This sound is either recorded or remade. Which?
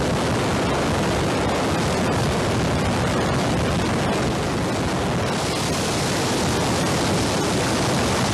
recorded